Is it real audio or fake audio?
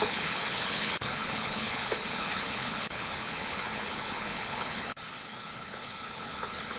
fake